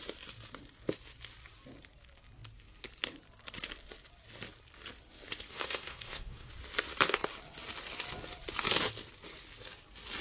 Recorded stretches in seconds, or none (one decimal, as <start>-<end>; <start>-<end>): 0.0-5.5; 6.5-10.2